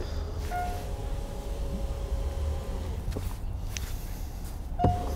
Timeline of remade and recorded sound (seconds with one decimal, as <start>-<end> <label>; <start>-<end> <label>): 0.0-5.2 recorded